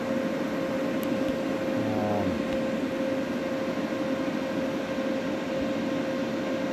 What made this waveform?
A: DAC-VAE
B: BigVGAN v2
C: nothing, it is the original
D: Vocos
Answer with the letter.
C